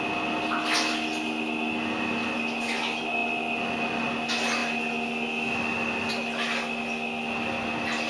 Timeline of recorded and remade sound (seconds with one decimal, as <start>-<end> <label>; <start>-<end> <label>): 0.0-8.1 recorded